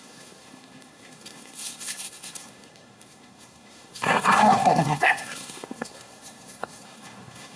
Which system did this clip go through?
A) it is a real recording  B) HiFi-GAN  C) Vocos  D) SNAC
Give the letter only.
D